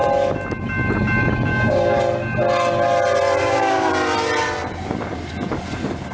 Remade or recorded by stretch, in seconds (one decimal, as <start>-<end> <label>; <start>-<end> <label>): 0.0-1.5 recorded; 1.5-2.0 remade; 2.0-3.4 recorded; 3.4-3.9 remade; 3.9-6.1 recorded